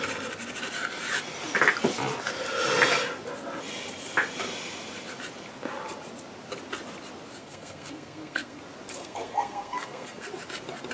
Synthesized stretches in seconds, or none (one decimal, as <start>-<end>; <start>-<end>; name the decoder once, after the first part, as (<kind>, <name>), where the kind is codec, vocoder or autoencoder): 7.4-8.6 (codec, SNAC); 9.0-10.3